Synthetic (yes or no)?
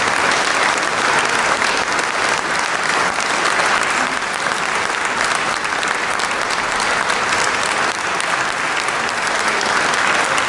no